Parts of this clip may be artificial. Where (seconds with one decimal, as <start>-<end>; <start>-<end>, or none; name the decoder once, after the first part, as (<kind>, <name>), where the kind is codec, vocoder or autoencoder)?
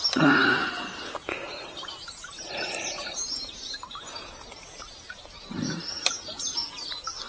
0.0-0.4 (vocoder, BigVGAN v2); 2.0-6.6